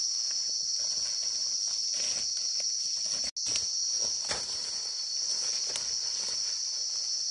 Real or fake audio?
real